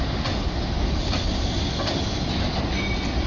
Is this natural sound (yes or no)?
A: yes